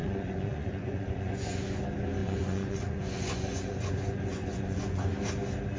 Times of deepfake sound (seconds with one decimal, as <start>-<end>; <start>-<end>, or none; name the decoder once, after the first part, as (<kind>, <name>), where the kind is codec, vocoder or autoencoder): 0.0-1.8 (vocoder, Vocos); 2.2-5.1